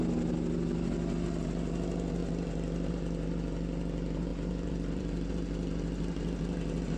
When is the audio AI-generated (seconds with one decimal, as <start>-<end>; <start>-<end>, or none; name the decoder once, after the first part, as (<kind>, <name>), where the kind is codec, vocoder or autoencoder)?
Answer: 4.3-5.3 (vocoder, BigVGAN v2)